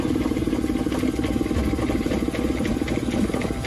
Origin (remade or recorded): recorded